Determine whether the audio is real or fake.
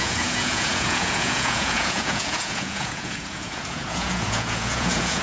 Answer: fake